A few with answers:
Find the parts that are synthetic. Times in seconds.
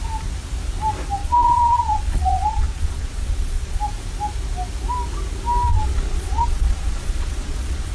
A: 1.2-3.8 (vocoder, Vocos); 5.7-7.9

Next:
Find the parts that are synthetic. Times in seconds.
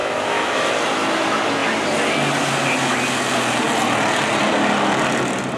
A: 0.0-0.7 (autoencoder, DAC-VAE)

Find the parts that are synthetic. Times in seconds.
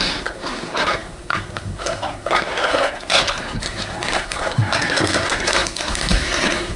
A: 0.0-6.8 (codec, SNAC)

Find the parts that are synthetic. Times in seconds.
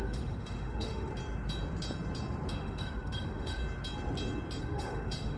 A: 0.0-1.1 (autoencoder, DAC-VAE); 2.5-3.6; 4.6-5.4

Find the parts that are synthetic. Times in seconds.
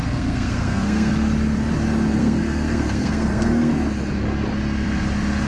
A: 0.0-1.1 (codec, SNAC); 2.2-3.7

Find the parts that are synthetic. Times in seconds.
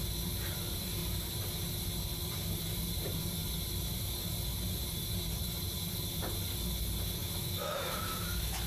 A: 7.2-8.7 (autoencoder, DAC-VAE)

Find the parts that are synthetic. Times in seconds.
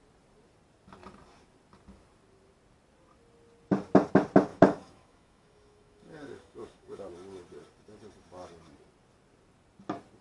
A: 4.5-7.1 (autoencoder, DAC-VAE)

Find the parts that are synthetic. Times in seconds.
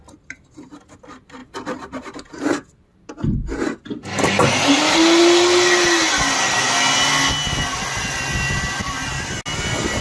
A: none